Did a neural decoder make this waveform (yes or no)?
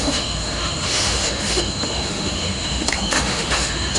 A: yes